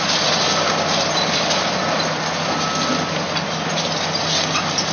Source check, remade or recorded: recorded